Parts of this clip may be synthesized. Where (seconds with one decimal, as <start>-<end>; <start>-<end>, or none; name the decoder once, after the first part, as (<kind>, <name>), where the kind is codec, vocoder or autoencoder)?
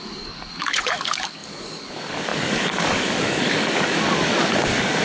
0.0-5.0 (codec, DAC)